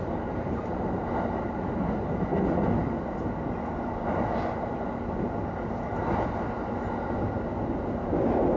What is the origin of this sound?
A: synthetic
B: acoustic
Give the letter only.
B